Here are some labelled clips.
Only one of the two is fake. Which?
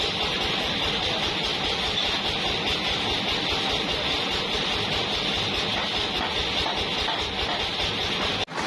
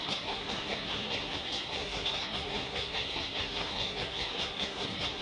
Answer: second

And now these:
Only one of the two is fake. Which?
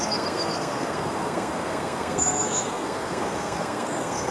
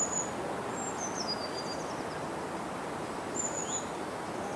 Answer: first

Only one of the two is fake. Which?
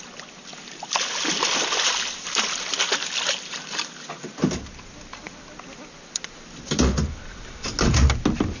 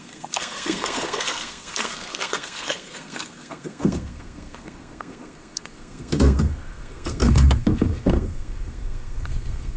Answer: second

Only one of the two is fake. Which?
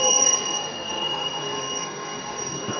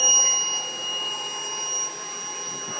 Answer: first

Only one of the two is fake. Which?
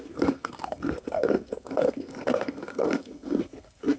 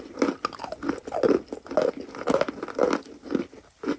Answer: first